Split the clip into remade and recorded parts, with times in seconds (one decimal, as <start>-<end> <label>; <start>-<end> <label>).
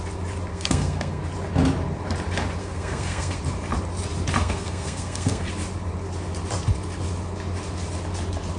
0.0-0.5 recorded; 0.5-1.2 remade; 1.2-2.6 recorded; 2.6-3.4 remade; 3.4-4.4 recorded; 4.4-5.5 remade; 5.5-8.6 recorded